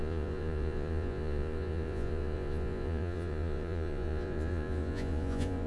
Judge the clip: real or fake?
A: fake